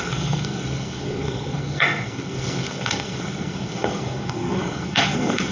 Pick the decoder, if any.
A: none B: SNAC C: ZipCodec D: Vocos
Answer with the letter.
B